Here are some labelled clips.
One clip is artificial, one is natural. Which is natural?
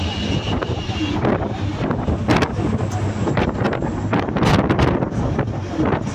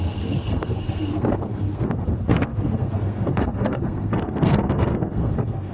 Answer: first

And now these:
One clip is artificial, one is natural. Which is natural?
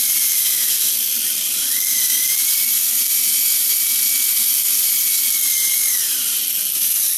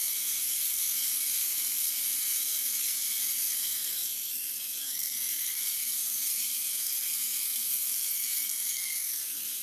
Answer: first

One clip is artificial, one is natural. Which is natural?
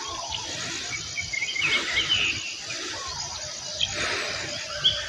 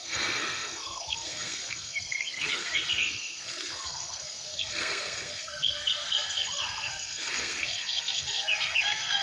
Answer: first